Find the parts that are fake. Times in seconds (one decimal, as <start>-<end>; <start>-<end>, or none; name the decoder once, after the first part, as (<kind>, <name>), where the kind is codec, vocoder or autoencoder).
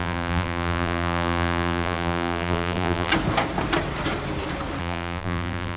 0.0-3.1 (vocoder, BigVGAN v2); 4.8-5.8